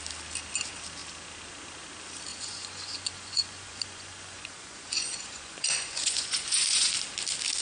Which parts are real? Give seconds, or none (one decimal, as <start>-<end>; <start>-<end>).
0.0-2.3; 6.9-7.6